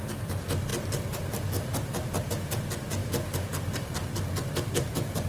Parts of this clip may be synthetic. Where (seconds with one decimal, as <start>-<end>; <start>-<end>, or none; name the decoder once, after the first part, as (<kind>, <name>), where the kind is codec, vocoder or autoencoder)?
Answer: none